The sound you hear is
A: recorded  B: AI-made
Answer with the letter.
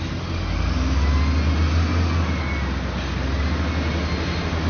A